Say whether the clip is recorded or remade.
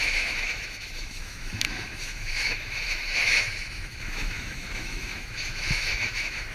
remade